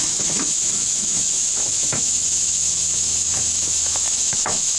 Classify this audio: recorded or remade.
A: remade